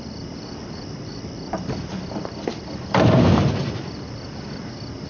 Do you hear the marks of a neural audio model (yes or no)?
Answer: no